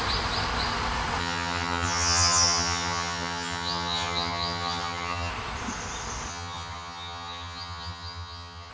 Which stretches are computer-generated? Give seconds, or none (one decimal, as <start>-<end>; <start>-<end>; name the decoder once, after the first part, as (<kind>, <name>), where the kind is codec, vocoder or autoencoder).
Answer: 1.2-5.3 (vocoder, HiFi-GAN); 6.3-8.7